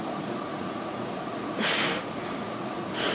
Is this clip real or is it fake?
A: fake